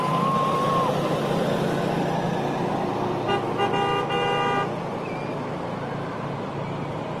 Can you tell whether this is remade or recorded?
recorded